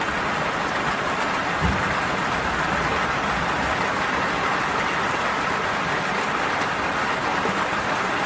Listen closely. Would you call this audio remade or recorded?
recorded